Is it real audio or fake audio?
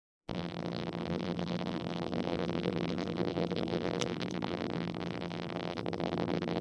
fake